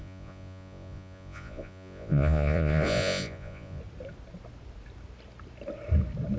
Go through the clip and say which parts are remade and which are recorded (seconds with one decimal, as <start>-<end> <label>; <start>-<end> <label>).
0.0-3.8 remade; 3.8-6.4 recorded